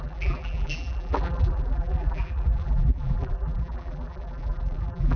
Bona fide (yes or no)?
no